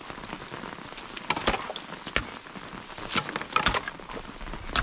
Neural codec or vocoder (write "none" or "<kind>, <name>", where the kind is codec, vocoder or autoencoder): none